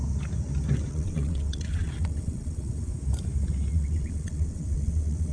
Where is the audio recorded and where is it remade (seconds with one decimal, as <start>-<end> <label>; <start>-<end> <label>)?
0.0-0.9 recorded; 0.9-2.9 remade; 2.9-3.7 recorded; 3.7-5.3 remade